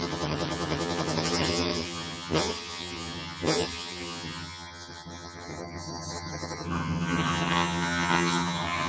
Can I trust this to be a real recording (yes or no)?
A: no